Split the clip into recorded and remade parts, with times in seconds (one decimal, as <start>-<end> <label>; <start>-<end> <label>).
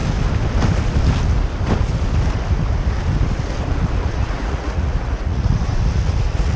0.0-4.0 recorded; 4.0-6.6 remade